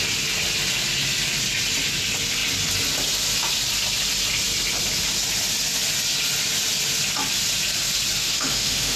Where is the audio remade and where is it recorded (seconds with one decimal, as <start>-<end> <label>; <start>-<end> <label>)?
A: 0.0-8.2 recorded; 8.2-9.0 remade